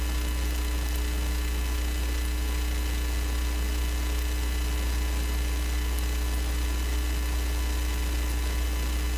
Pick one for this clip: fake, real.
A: real